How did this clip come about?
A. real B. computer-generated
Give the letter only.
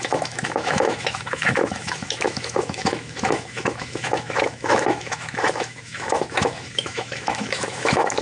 B